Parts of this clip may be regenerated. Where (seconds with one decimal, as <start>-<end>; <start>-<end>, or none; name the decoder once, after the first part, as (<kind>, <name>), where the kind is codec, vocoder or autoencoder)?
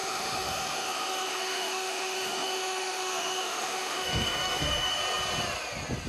0.0-5.0 (autoencoder, DAC-VAE)